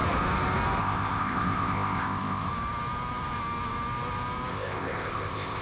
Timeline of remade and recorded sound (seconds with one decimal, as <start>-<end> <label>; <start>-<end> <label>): 0.0-0.8 recorded; 0.8-2.5 remade; 2.5-4.5 recorded; 4.5-5.6 remade